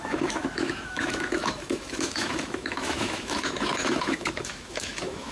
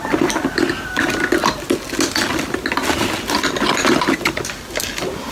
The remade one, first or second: first